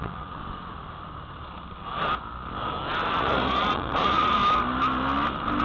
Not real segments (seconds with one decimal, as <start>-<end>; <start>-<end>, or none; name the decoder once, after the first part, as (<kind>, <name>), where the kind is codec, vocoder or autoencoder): 0.0-0.4 (vocoder, Vocos); 3.2-4.4